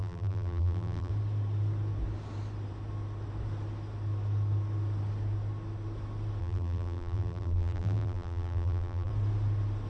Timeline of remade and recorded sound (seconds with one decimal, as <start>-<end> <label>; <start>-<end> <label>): 0.0-1.1 remade; 1.1-6.4 recorded; 6.4-9.1 remade; 9.1-9.9 recorded

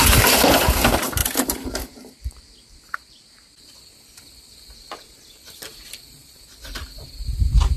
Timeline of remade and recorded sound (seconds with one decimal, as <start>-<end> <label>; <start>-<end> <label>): 0.0-1.2 recorded; 1.2-3.9 remade; 3.9-5.7 recorded; 5.7-7.8 remade

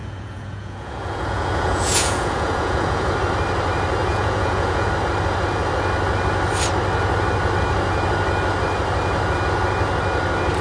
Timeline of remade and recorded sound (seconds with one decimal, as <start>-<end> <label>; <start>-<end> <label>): 0.0-3.1 remade; 3.1-4.0 recorded; 4.0-4.9 remade; 4.9-10.6 recorded

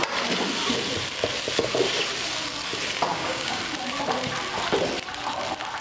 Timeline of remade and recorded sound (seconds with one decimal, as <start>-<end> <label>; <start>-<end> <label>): 0.0-3.1 recorded; 3.1-3.6 remade; 3.6-5.8 recorded

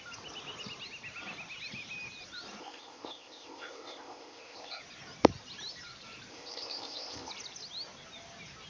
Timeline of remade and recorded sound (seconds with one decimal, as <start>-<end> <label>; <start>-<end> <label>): 0.0-2.6 recorded; 2.6-4.8 remade; 4.8-6.3 recorded; 6.3-7.3 remade; 7.3-8.7 recorded

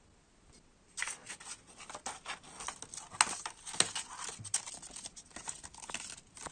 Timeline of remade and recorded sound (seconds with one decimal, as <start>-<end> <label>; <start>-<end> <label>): 0.0-6.5 recorded